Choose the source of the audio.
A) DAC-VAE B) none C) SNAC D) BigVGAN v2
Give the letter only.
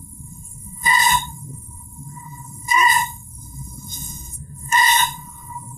C